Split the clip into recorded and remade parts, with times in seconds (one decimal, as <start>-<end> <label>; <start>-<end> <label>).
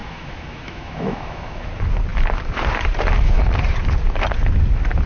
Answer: 0.0-1.7 remade; 1.7-5.1 recorded